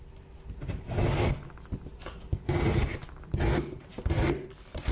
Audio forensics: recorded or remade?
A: recorded